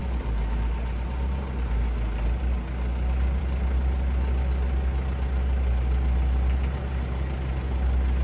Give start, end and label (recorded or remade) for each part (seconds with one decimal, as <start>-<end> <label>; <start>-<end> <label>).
0.0-8.2 recorded